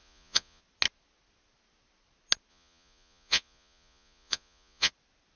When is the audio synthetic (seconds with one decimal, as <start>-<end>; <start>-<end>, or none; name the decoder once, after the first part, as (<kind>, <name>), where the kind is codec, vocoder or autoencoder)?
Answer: 0.0-0.6 (vocoder, Vocos); 2.5-4.9